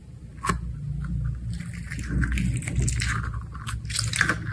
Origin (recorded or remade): recorded